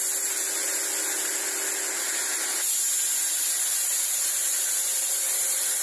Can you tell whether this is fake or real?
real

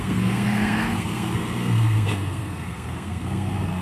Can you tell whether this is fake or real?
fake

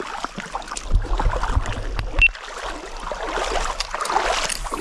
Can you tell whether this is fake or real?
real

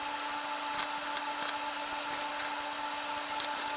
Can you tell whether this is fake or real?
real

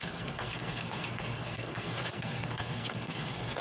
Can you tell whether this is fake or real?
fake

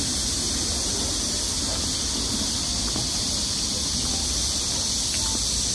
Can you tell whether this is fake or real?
real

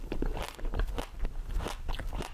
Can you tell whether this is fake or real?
real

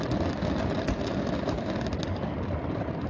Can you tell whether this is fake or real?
real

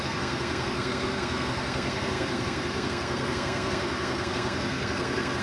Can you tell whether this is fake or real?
fake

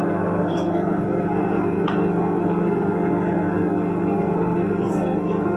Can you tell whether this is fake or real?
fake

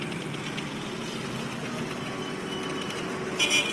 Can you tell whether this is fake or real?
real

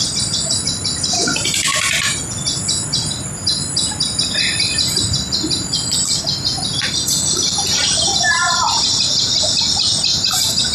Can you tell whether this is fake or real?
real